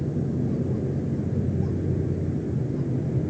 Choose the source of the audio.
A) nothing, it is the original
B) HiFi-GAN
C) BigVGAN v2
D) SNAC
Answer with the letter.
A